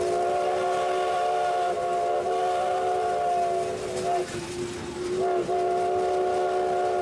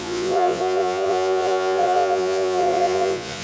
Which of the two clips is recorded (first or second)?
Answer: first